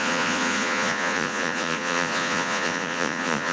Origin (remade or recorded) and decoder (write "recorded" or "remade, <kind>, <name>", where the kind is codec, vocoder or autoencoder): remade, vocoder, Vocos